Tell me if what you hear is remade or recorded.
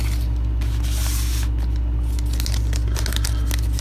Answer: recorded